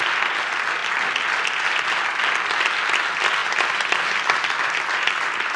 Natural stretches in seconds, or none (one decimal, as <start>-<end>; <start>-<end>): 0.0-5.6